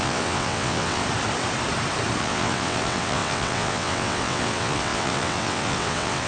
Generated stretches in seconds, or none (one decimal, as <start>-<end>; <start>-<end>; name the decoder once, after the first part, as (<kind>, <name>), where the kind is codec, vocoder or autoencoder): 0.0-1.0 (vocoder, WaveNeXt); 2.2-6.3